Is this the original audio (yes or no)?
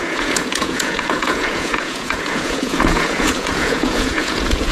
no